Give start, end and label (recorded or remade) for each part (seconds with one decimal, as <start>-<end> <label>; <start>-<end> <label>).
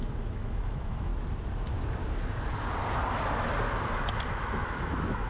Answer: 0.0-1.1 remade; 1.1-4.3 recorded; 4.3-5.3 remade